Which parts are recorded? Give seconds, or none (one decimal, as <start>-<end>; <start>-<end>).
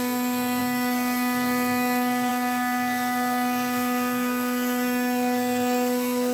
none